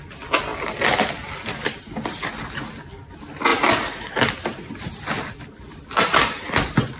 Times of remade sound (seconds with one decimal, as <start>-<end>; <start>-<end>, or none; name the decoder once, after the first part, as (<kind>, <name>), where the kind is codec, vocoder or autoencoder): none